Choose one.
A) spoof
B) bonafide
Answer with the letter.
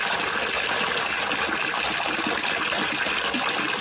B